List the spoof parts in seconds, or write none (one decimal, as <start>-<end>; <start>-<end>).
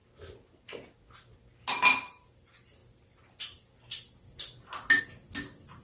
none